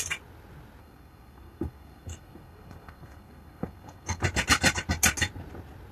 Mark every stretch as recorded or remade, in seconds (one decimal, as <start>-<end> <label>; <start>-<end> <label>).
0.0-0.8 recorded; 0.8-4.2 remade; 4.2-5.9 recorded

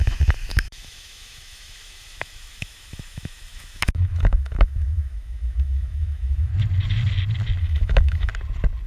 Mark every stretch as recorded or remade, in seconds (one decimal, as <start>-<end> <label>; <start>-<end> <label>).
0.0-6.5 remade; 6.5-7.6 recorded; 7.6-8.3 remade; 8.3-8.9 recorded

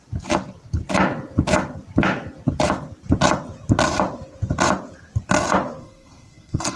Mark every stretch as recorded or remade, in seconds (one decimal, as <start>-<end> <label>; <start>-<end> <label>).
0.0-5.8 recorded; 5.8-6.8 remade

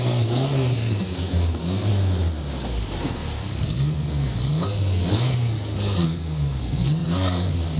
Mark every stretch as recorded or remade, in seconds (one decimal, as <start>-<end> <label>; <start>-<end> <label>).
0.0-1.9 remade; 1.9-3.0 recorded; 3.0-7.8 remade

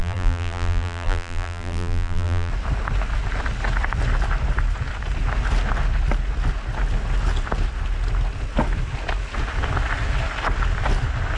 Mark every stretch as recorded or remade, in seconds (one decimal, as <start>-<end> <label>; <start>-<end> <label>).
0.0-2.5 remade; 2.5-11.4 recorded

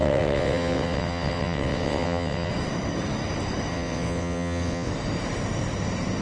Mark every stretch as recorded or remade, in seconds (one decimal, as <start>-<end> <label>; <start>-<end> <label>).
0.0-2.5 remade; 2.5-3.7 recorded; 3.7-4.9 remade; 4.9-6.2 recorded

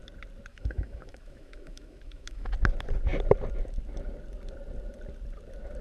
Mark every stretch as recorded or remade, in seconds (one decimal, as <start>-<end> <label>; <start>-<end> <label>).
0.0-0.5 recorded; 0.5-2.5 remade; 2.5-5.8 recorded

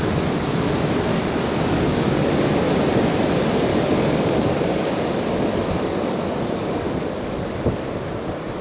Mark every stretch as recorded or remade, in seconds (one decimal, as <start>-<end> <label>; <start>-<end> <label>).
0.0-1.1 recorded; 1.1-2.3 remade; 2.3-3.7 recorded; 3.7-7.7 remade; 7.7-8.6 recorded